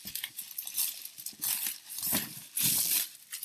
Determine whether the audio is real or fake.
real